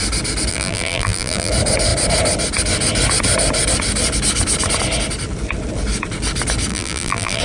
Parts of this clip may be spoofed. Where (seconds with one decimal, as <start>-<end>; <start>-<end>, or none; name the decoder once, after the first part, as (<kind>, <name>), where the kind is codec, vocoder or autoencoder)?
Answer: 0.5-1.5 (vocoder, BigVGAN v2); 6.7-7.4